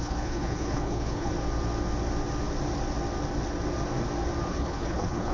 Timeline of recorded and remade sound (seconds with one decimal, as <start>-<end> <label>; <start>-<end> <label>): 0.0-1.3 remade; 1.3-4.5 recorded; 4.5-5.3 remade